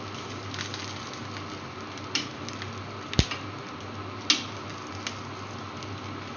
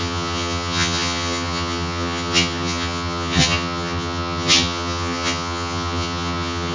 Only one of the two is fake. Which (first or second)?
second